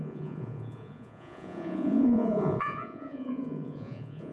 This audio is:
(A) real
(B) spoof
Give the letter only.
B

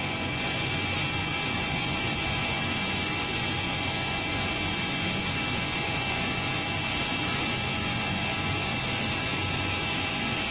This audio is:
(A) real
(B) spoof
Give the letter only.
B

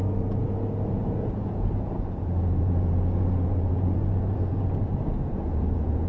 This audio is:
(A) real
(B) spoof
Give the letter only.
B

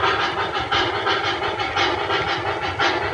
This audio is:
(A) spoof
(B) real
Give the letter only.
B